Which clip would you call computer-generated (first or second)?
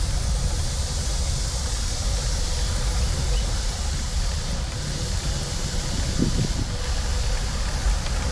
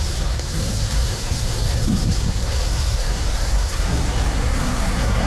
second